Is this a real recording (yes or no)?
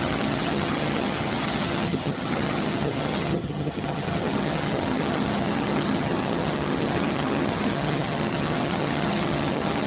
no